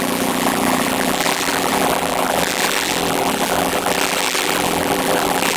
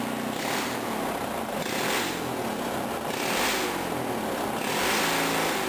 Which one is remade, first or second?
first